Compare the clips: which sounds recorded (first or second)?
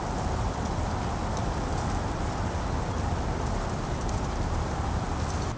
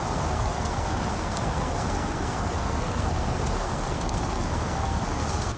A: first